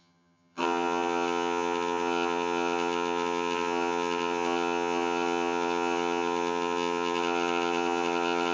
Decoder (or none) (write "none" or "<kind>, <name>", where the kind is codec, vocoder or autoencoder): vocoder, HiFi-GAN